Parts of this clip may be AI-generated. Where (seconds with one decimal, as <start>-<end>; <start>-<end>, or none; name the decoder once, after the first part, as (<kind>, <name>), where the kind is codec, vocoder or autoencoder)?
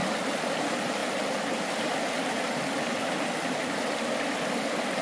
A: none